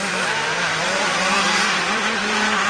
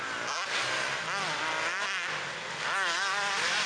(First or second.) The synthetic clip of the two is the first